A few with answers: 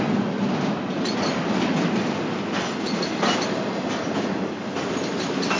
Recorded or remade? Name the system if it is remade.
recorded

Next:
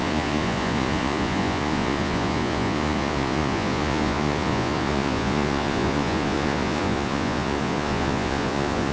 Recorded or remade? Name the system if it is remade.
remade, vocoder, Vocos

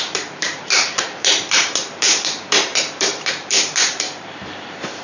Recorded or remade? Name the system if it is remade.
remade, vocoder, BigVGAN v2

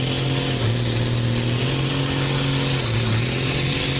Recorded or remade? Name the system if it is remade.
recorded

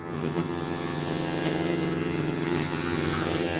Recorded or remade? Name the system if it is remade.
remade, vocoder, HiFi-GAN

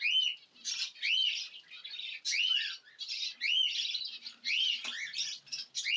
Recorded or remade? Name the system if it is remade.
recorded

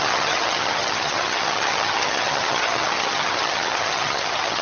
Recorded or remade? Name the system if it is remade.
remade, vocoder, HiFi-GAN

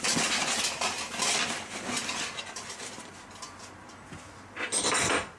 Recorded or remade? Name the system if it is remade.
recorded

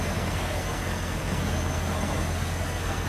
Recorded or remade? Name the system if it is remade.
remade, codec, SNAC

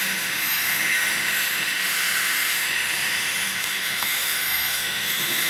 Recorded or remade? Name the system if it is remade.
remade, autoencoder, DAC-VAE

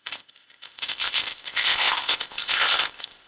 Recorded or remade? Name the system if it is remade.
remade, codec, ZipCodec